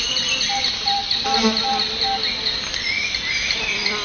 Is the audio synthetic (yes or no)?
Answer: no